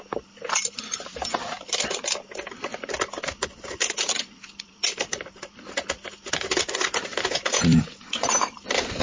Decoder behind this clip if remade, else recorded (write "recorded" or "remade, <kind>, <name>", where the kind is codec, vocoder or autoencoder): recorded